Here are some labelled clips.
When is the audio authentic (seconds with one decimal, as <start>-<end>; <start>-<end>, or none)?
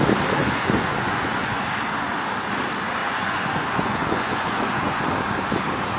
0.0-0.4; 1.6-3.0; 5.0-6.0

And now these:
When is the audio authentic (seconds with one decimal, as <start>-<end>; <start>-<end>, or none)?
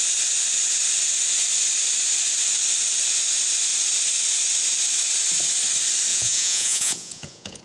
0.0-6.1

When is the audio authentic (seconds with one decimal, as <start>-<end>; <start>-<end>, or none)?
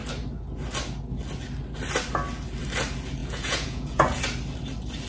0.0-3.2; 4.2-5.1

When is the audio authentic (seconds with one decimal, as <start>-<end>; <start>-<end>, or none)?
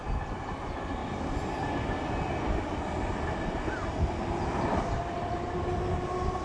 0.0-6.4